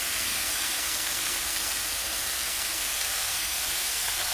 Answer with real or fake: fake